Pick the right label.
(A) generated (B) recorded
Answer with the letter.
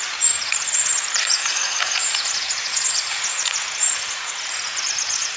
A